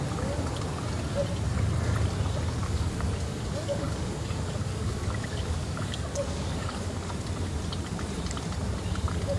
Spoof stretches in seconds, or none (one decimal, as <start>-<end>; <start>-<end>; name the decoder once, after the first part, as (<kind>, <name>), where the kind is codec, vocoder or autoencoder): 2.6-7.1 (codec, DAC)